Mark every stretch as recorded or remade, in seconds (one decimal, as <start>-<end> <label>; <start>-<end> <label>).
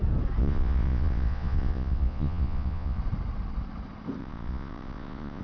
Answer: 0.0-0.4 recorded; 0.4-3.0 remade; 3.0-4.2 recorded; 4.2-5.4 remade